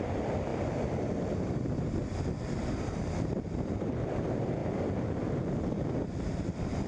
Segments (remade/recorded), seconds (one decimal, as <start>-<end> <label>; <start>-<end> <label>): 0.0-4.6 remade; 4.6-6.4 recorded; 6.4-6.9 remade